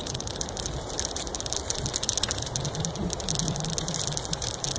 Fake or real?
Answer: real